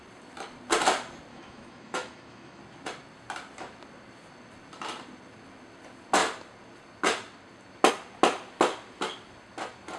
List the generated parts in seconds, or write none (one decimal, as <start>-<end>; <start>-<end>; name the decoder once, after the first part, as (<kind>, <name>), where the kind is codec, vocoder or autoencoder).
1.3-2.6 (autoencoder, DAC-VAE)